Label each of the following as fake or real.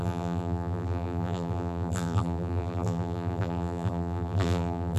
fake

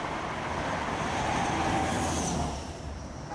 fake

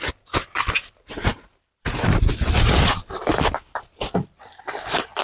real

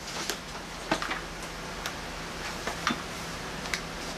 real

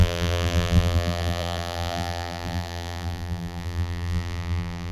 fake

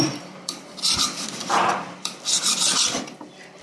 fake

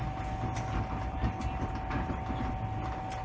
real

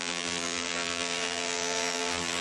fake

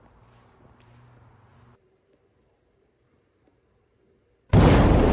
fake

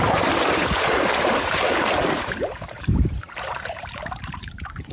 fake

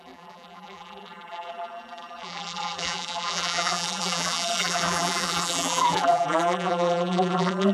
fake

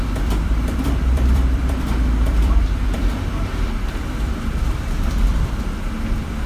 fake